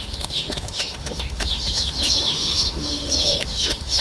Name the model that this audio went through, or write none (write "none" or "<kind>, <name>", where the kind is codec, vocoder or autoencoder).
autoencoder, DAC-VAE